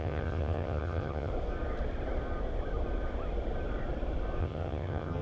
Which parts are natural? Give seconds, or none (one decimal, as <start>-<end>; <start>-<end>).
1.3-4.4